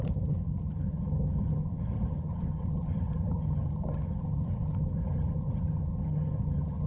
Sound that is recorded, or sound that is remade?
remade